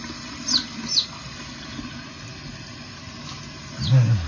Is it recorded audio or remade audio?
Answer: recorded